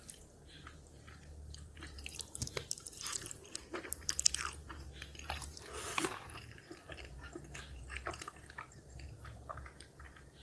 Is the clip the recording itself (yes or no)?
no